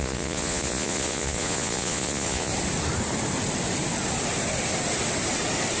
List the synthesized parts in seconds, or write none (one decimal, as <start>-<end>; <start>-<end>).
0.0-2.5